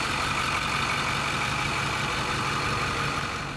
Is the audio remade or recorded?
recorded